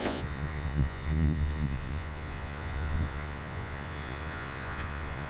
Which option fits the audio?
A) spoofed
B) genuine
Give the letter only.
A